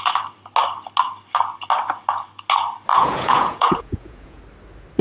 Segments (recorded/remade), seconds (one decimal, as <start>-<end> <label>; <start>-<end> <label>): 0.0-2.9 recorded; 2.9-4.4 remade; 4.4-5.0 recorded